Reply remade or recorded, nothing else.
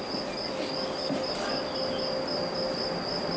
recorded